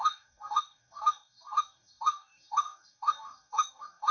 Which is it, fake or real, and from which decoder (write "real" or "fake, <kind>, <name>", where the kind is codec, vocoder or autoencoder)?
fake, codec, DAC